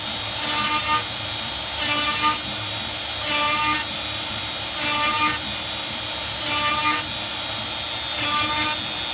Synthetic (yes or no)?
no